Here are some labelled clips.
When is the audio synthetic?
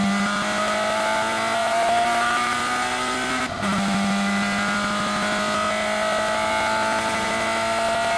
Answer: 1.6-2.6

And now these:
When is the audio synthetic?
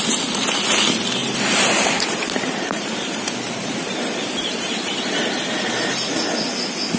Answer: 1.2-5.4